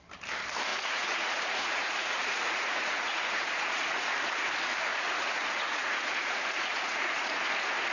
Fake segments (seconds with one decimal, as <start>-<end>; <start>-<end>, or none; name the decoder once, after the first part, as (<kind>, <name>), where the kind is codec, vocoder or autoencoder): 0.7-4.1 (vocoder, Vocos); 4.9-7.5